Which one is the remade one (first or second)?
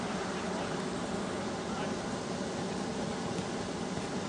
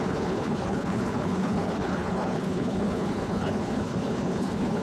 second